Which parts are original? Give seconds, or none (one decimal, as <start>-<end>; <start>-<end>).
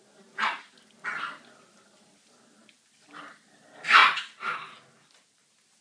0.0-5.8